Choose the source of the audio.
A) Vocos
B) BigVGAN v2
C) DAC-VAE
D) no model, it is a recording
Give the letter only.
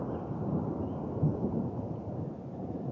B